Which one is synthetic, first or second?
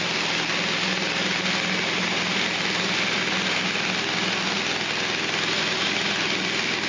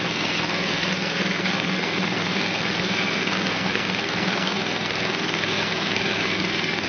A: second